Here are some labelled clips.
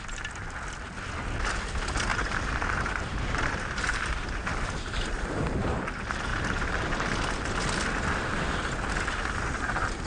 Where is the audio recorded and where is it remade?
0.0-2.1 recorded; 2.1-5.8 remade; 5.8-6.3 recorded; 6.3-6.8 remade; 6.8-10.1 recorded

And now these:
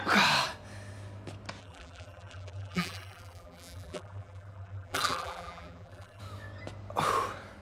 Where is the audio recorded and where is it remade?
0.0-1.6 recorded; 1.6-6.2 remade; 6.2-7.6 recorded